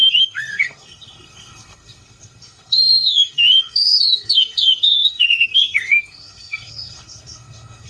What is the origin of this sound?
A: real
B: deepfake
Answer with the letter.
B